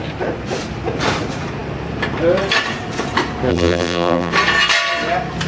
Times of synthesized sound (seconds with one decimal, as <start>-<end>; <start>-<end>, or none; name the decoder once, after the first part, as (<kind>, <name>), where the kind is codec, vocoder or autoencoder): 3.5-4.3 (vocoder, BigVGAN v2)